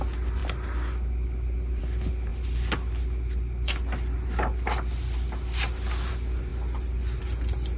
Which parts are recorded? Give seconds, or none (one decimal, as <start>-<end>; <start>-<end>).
0.0-7.8